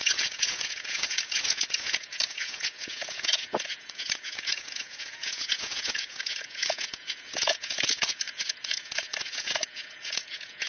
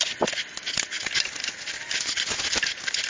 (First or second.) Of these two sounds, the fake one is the first